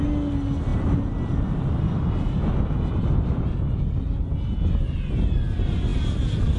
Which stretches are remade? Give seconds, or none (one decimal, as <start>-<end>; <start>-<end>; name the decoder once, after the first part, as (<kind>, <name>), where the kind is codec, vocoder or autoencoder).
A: none